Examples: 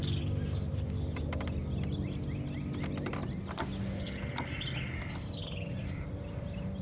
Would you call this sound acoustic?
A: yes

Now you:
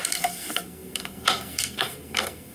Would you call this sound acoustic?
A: no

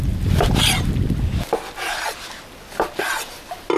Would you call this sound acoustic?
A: yes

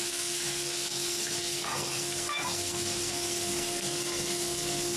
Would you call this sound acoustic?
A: no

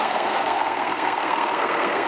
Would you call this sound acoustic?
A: no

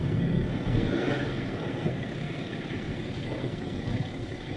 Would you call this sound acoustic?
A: no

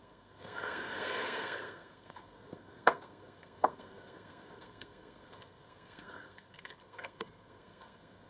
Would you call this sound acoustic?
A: no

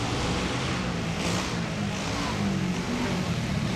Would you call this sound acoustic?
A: yes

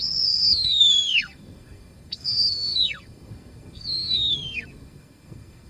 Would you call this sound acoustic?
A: no